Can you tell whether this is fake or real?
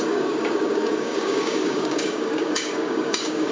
fake